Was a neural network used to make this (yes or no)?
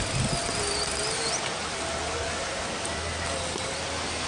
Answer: no